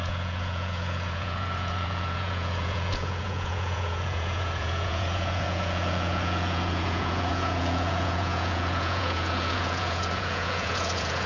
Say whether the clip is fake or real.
fake